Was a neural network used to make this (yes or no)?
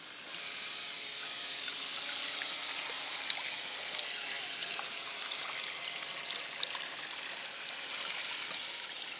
no